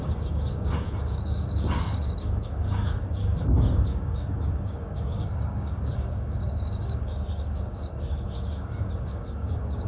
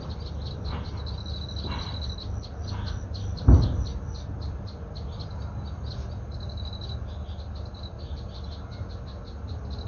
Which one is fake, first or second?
first